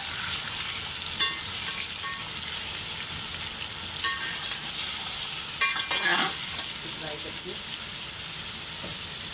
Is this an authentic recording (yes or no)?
yes